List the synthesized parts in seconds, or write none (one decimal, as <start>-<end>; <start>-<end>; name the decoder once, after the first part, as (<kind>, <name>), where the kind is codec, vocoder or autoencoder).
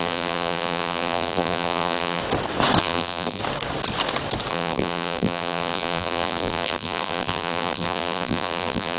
0.0-2.2 (vocoder, BigVGAN v2); 2.8-3.4; 4.5-9.0